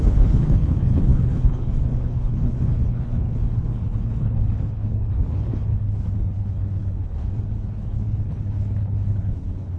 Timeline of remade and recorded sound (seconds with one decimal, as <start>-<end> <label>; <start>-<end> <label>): 0.0-9.8 remade